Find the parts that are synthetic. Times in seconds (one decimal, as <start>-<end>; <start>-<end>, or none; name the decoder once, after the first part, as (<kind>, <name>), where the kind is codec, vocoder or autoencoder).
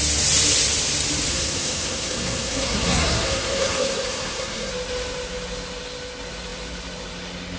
1.3-4.7 (codec, SNAC)